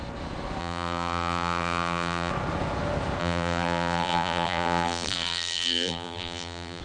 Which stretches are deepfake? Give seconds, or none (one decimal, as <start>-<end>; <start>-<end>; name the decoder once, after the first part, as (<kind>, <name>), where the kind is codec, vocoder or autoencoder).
0.6-2.3 (vocoder, BigVGAN v2); 3.2-6.8